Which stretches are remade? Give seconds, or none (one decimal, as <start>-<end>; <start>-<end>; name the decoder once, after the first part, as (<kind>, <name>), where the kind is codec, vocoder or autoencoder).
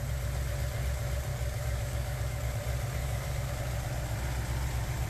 1.3-2.5 (codec, DAC); 3.0-3.5